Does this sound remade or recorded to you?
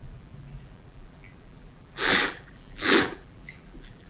remade